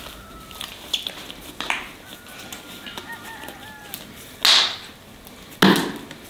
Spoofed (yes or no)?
no